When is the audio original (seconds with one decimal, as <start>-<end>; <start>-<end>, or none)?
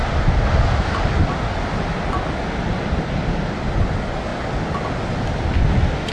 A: 0.0-6.1